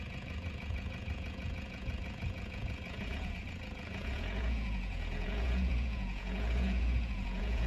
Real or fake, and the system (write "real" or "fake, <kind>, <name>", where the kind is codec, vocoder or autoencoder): fake, vocoder, Vocos